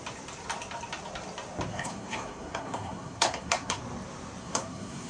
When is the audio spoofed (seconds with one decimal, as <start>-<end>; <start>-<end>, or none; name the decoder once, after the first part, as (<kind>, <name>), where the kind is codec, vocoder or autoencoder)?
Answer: 1.7-3.8 (codec, SNAC); 4.4-5.1